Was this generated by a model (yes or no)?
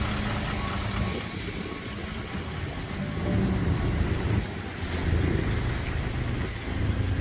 no